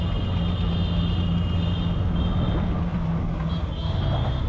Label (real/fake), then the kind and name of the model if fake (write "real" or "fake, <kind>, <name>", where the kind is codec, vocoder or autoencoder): real